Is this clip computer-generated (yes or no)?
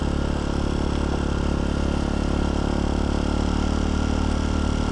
no